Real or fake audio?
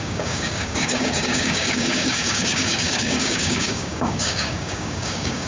fake